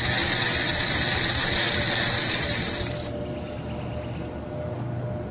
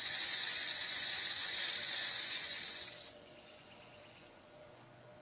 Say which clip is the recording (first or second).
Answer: first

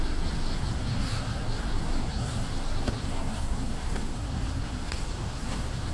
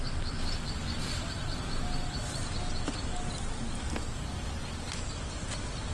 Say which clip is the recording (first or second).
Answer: second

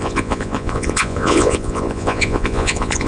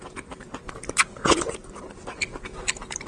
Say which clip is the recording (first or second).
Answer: second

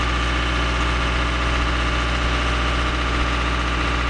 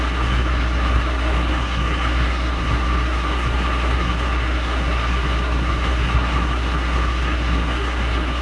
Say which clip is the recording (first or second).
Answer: first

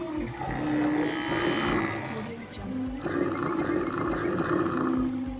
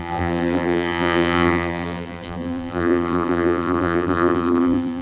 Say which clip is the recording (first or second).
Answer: first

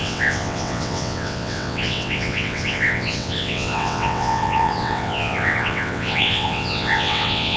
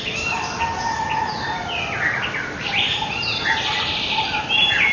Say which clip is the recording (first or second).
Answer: second